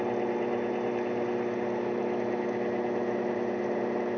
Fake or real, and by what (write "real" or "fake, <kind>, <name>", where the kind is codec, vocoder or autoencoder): real